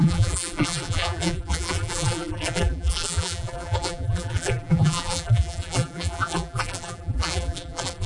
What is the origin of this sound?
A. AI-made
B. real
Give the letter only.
A